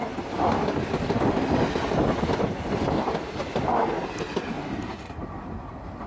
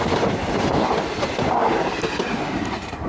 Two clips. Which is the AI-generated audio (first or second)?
second